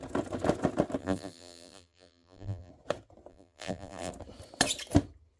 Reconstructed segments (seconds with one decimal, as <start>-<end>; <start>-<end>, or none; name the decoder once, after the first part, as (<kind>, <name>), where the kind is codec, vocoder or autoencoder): 1.0-2.7 (vocoder, BigVGAN v2); 3.3-4.1